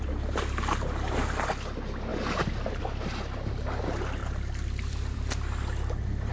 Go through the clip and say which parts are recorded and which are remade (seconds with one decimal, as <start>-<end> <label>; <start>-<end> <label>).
0.0-4.2 recorded; 4.2-6.3 remade